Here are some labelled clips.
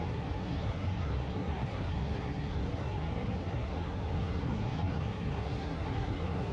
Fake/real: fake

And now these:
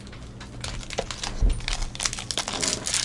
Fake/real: real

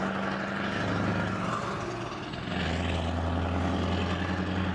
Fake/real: real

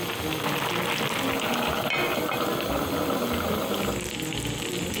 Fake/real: real